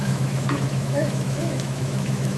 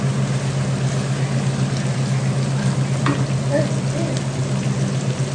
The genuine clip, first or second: second